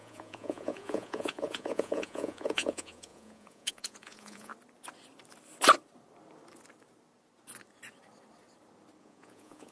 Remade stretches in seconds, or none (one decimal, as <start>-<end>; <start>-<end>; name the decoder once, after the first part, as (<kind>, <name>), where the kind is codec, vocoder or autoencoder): 0.0-4.5 (vocoder, Vocos); 9.0-9.7